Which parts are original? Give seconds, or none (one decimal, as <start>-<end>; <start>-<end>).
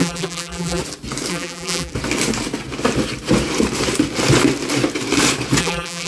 0.8-1.3; 1.9-5.6